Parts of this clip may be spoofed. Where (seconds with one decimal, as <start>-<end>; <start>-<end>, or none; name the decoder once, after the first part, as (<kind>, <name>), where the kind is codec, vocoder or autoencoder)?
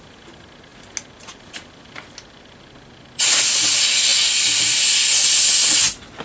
none